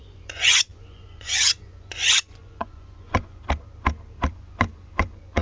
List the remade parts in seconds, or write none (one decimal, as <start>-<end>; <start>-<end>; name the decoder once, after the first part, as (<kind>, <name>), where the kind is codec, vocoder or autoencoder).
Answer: 0.0-3.4 (vocoder, Vocos); 4.3-5.4